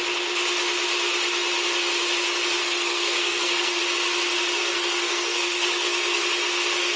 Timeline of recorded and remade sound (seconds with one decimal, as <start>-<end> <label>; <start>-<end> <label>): 0.0-2.6 recorded; 2.6-3.8 remade; 3.8-4.6 recorded; 4.6-6.2 remade; 6.2-7.0 recorded